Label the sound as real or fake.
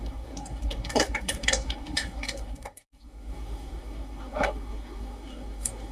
fake